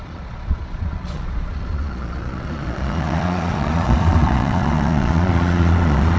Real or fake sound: fake